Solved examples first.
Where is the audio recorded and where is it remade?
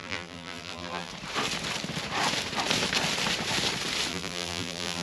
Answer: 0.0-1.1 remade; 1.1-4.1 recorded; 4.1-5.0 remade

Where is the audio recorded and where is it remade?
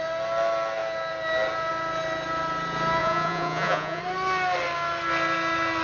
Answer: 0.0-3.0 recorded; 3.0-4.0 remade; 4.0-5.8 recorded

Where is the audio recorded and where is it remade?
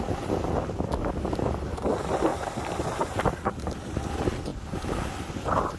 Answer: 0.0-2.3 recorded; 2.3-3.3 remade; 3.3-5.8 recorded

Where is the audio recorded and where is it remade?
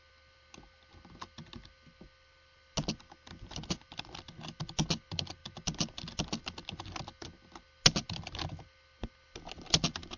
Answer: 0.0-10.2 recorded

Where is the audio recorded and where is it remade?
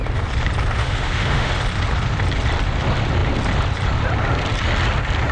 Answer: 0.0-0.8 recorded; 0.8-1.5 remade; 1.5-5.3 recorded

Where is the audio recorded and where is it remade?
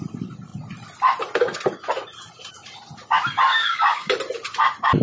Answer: 0.0-3.5 recorded; 3.5-4.1 remade; 4.1-5.0 recorded